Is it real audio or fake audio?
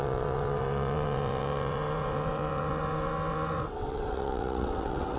fake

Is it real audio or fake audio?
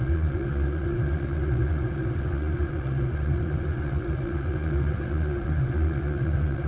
fake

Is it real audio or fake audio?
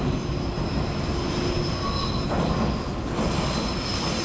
real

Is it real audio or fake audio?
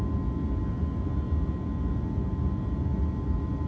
real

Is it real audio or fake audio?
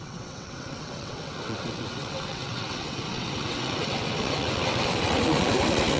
fake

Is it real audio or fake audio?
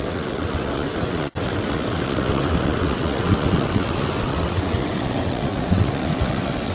fake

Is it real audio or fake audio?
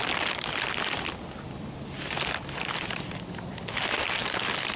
real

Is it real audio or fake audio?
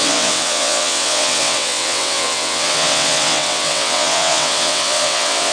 fake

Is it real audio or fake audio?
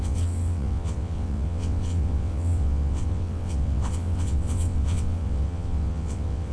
fake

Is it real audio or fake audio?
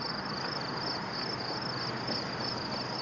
real